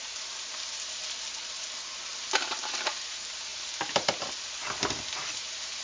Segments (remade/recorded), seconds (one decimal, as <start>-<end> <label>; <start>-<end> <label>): 0.0-5.8 recorded